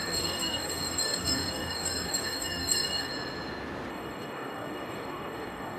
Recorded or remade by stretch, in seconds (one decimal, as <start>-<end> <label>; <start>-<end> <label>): 0.0-3.1 remade; 3.1-3.9 recorded; 3.9-5.8 remade